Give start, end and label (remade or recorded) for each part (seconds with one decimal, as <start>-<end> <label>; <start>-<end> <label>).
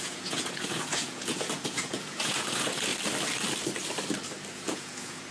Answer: 0.0-2.9 remade; 2.9-4.5 recorded; 4.5-5.3 remade